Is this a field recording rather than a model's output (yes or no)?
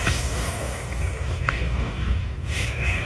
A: no